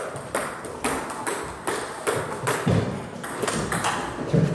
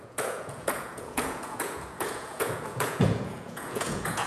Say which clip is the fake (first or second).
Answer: second